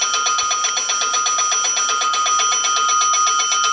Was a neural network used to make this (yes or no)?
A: no